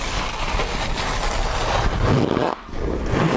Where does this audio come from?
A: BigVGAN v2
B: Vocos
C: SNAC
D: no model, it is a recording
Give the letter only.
D